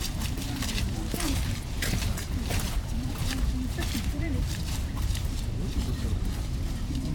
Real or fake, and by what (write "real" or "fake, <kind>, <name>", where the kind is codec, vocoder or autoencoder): fake, vocoder, BigVGAN v2